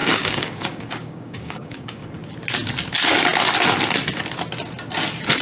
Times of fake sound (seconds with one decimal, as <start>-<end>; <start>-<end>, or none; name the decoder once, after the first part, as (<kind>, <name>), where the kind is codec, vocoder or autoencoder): 0.0-2.0 (codec, DAC)